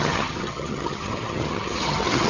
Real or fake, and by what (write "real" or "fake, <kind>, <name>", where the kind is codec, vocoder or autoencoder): fake, vocoder, HiFi-GAN